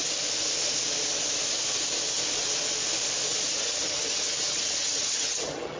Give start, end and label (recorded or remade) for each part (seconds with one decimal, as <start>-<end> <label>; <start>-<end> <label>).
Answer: 0.0-3.5 recorded; 3.5-5.8 remade